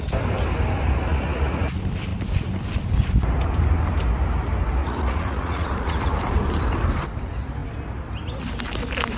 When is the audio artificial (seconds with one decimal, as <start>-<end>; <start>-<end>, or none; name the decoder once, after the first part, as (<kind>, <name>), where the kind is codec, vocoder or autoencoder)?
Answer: 1.1-1.7 (vocoder, Vocos); 4.8-6.1